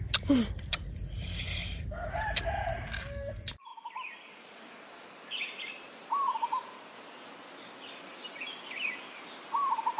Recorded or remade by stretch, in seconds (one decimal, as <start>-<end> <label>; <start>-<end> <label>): 0.0-10.0 recorded